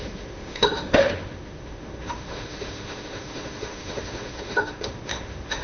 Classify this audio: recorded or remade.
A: remade